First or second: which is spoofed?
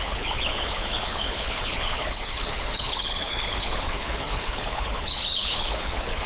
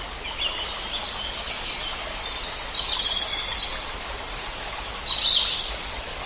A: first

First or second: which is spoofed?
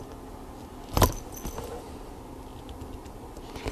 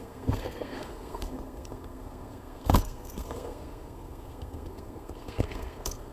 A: second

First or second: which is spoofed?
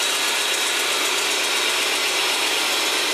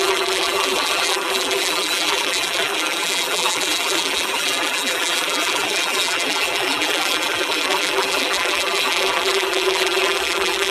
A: second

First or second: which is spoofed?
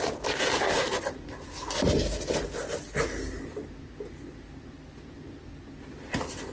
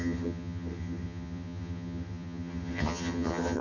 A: second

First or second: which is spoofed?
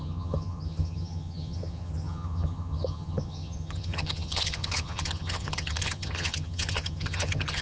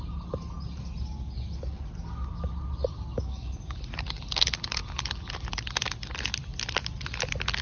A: first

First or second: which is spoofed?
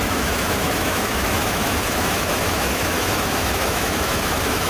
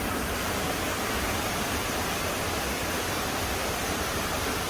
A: first